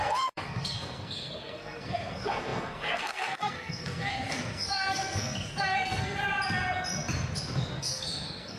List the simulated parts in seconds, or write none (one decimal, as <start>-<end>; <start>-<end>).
0.0-6.2; 7.8-8.6